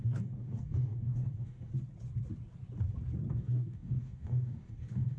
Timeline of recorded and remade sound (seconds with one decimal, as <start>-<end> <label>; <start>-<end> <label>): 0.0-1.7 remade; 1.7-3.3 recorded; 3.3-5.2 remade

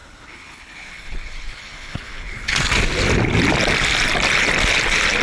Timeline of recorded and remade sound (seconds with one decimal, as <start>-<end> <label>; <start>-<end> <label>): 0.0-2.5 remade; 2.5-5.2 recorded

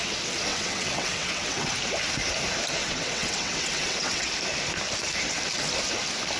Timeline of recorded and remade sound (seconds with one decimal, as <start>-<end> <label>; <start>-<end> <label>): 0.0-0.5 recorded; 0.5-1.7 remade; 1.7-2.8 recorded; 2.8-4.3 remade; 4.3-6.4 recorded

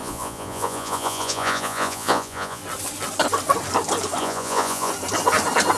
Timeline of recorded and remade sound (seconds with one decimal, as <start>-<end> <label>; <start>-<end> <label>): 0.0-2.6 remade; 2.6-4.2 recorded; 4.2-4.9 remade; 4.9-5.8 recorded